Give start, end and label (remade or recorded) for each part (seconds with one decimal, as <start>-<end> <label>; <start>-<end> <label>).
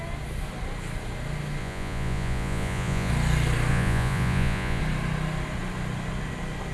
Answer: 0.0-1.6 recorded; 1.6-3.1 remade; 3.1-3.7 recorded; 3.7-4.8 remade; 4.8-6.7 recorded